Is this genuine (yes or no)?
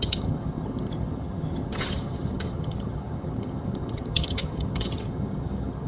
no